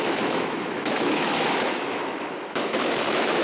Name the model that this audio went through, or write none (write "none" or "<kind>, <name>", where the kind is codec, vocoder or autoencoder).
autoencoder, DAC-VAE